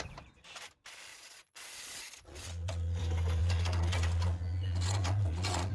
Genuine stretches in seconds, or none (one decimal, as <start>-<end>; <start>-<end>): 0.0-1.1; 3.0-3.4